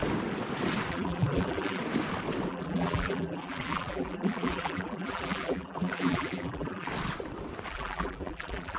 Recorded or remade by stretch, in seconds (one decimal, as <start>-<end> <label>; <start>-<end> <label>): 0.0-0.9 recorded; 0.9-1.8 remade; 1.8-2.5 recorded; 2.5-6.9 remade; 6.9-7.7 recorded; 7.7-8.8 remade

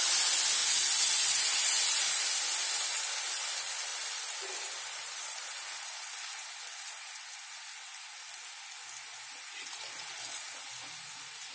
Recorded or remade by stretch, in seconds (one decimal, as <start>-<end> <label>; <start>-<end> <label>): 0.0-0.6 recorded; 0.6-1.4 remade; 1.4-3.9 recorded; 3.9-5.4 remade; 5.4-11.5 recorded

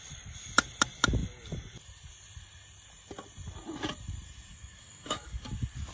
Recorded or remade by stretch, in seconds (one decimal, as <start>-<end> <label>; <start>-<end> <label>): 0.0-4.5 recorded; 4.5-5.5 remade; 5.5-5.9 recorded